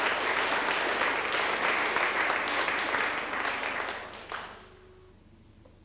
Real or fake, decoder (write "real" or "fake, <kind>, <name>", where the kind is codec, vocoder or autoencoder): real